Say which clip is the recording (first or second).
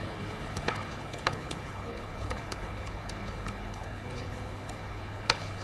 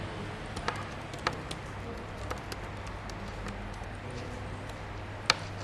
second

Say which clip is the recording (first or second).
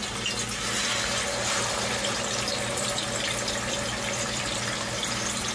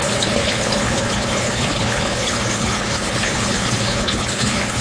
first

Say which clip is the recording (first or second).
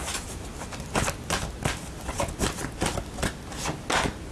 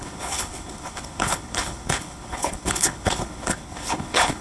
first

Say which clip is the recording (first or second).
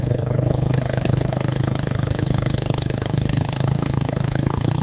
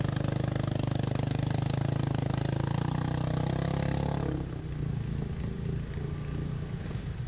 second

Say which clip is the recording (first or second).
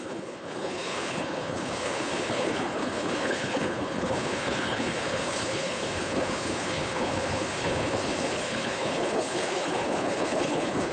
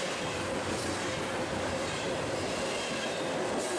second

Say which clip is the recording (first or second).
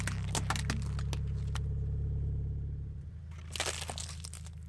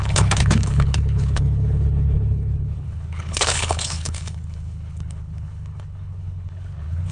first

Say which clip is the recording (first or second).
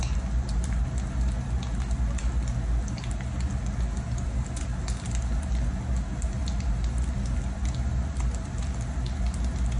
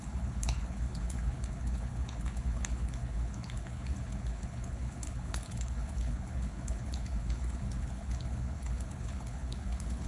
first